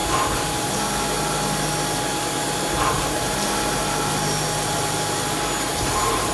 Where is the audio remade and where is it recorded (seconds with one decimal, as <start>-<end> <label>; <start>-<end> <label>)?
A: 0.0-2.9 recorded; 2.9-3.8 remade; 3.8-5.7 recorded; 5.7-6.3 remade